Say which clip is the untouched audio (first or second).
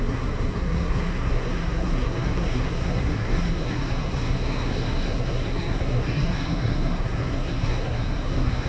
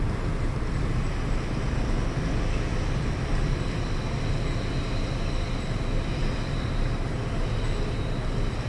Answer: second